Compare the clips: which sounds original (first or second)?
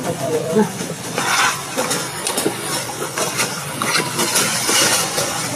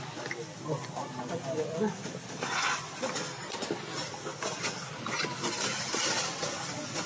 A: second